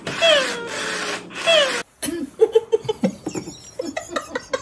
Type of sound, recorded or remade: recorded